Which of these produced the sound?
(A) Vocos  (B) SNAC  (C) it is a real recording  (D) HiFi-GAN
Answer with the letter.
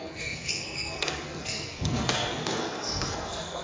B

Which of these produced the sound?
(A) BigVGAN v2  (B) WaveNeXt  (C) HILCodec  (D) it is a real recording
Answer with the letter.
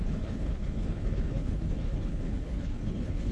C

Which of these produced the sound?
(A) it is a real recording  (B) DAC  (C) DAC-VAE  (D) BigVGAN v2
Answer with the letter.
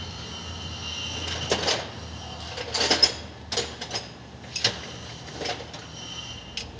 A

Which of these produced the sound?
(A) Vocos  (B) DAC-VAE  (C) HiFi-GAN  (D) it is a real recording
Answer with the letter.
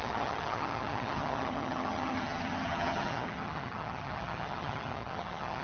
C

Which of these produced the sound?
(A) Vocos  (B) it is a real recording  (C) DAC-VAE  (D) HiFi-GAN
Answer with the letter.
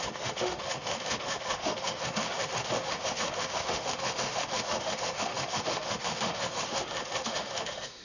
C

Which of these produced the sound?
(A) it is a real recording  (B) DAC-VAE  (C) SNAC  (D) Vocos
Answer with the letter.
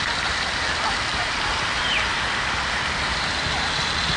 A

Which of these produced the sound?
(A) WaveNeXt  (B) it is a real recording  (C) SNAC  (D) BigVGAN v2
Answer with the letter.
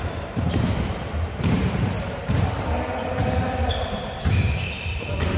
D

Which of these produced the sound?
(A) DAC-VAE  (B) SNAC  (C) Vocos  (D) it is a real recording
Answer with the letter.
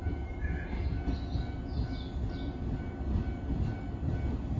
D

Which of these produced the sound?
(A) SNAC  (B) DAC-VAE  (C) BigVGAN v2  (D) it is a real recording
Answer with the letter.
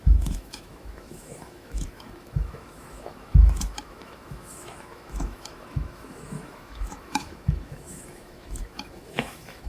B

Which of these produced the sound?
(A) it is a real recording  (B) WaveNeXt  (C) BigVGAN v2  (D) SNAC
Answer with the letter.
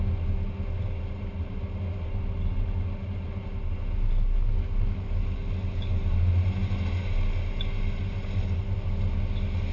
A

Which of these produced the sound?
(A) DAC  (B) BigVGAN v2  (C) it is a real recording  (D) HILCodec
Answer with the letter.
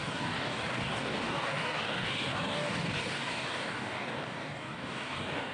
A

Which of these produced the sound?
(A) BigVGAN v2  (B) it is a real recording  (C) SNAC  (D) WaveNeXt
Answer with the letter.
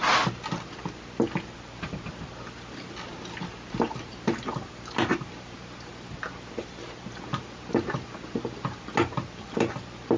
B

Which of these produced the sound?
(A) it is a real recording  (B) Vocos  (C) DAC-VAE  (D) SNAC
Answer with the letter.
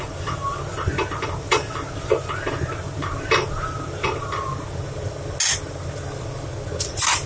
A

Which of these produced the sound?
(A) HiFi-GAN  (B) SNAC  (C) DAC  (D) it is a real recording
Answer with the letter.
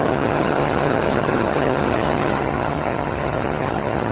A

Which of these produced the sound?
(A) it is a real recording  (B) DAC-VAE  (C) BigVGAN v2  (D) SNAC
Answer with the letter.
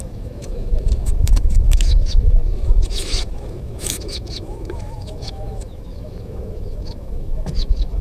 B